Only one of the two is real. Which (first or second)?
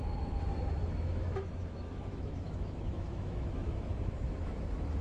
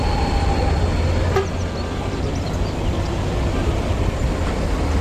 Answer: second